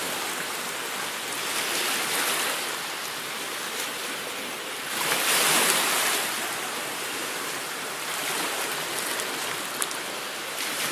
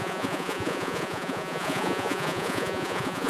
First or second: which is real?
first